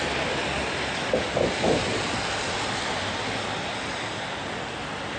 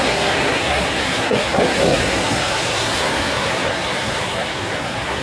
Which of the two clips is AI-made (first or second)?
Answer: second